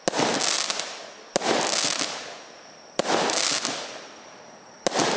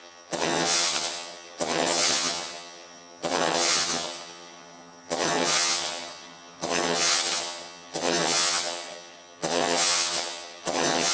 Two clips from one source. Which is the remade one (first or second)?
second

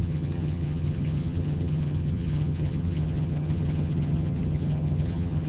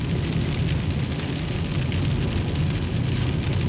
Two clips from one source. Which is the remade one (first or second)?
first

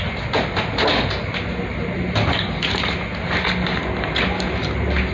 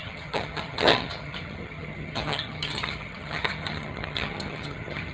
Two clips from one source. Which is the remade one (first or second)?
second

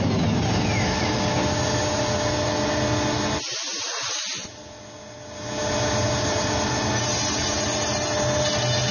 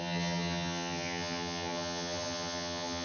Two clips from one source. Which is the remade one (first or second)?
second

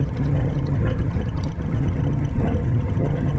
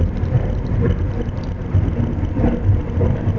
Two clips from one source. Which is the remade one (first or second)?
first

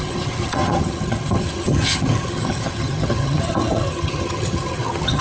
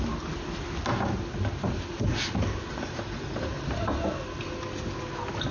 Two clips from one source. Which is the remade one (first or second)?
first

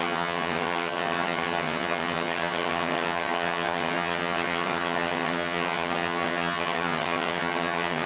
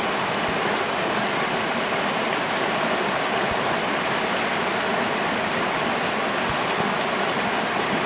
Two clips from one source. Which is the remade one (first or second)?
first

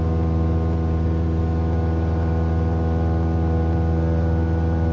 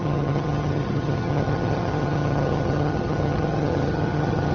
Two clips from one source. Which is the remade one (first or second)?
second